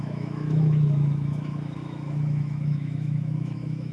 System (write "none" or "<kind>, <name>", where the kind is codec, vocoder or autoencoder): autoencoder, DAC-VAE